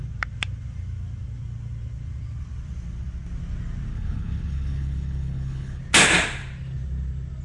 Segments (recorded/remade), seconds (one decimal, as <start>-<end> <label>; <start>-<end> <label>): 0.0-3.9 recorded; 3.9-5.8 remade; 5.8-7.4 recorded